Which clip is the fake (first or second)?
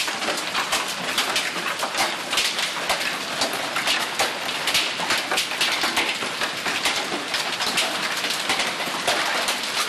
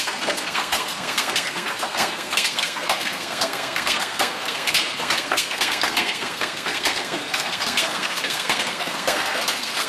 second